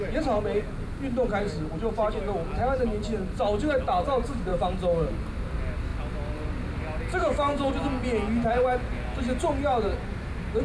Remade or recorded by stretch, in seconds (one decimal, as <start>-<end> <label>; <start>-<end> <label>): 0.0-7.1 recorded; 7.1-7.7 remade; 7.7-10.6 recorded